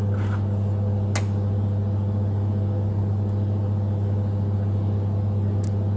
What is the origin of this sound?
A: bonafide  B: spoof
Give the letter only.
A